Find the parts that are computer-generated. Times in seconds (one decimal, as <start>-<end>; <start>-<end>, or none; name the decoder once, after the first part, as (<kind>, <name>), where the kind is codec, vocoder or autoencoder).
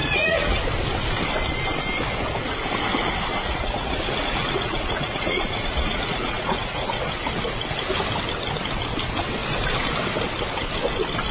0.0-0.6 (vocoder, Vocos); 3.3-7.0